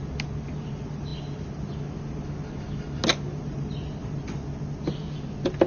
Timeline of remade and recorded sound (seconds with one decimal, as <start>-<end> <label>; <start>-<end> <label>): 0.0-5.7 recorded